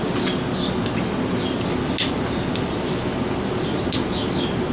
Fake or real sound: real